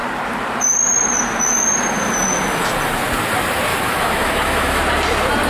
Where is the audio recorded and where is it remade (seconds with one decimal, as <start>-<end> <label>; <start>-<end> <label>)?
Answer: 0.0-3.7 recorded; 3.7-4.8 remade; 4.8-5.5 recorded